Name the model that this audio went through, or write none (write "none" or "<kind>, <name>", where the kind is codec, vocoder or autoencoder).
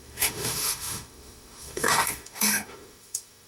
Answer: autoencoder, DAC-VAE